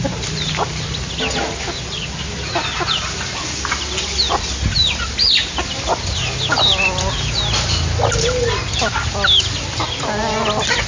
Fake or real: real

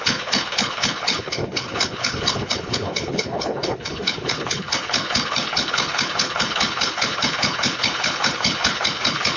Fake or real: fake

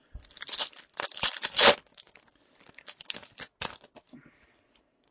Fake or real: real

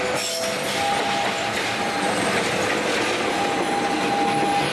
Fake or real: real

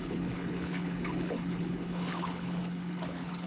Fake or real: fake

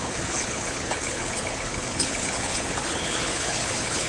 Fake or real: fake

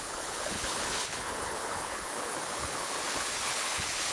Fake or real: fake